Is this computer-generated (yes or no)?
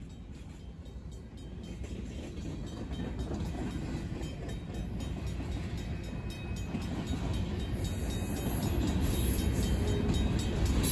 no